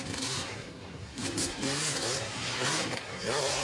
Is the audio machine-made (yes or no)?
yes